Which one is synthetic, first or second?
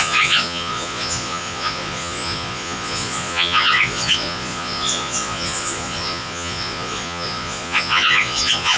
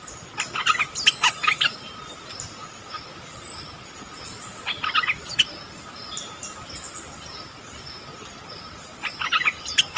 first